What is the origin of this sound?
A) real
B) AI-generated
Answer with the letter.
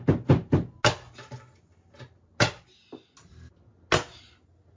A